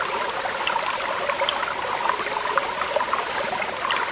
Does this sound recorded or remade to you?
recorded